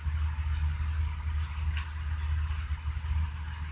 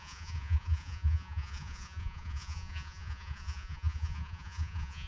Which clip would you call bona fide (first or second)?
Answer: first